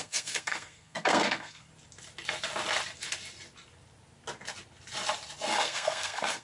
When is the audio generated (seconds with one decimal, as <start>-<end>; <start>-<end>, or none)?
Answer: 0.0-1.7; 5.5-6.4